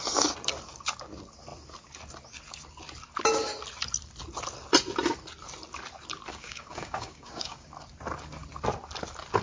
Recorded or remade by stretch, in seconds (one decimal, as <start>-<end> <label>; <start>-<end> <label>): 0.0-6.3 recorded; 6.3-7.7 remade; 7.7-9.4 recorded